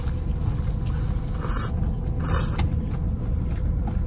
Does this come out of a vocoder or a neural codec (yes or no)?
no